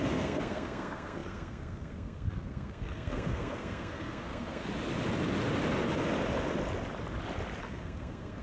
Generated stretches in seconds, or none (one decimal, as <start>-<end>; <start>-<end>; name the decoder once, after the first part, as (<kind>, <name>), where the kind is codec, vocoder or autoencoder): 0.0-4.7 (codec, SNAC); 7.6-8.4